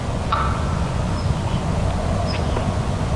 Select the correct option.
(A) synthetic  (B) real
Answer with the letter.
A